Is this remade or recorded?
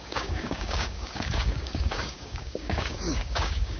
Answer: remade